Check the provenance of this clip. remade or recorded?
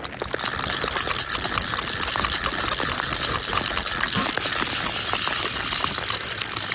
recorded